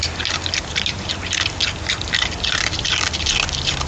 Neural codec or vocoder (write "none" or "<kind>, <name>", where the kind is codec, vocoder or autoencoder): none